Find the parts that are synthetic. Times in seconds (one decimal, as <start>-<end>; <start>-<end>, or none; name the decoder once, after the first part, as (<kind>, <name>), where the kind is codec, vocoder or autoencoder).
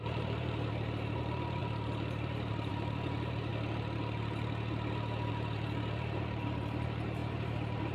0.0-3.5 (vocoder, BigVGAN v2); 5.3-7.9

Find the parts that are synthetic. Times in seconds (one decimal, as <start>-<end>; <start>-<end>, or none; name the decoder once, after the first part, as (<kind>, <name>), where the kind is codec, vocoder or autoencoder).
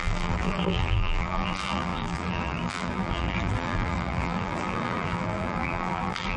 0.0-6.4 (vocoder, BigVGAN v2)